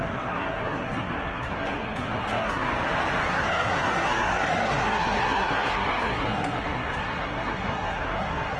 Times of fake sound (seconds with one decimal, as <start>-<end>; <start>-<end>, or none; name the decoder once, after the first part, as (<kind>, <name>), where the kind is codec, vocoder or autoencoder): 0.0-2.7 (codec, SNAC); 3.2-8.6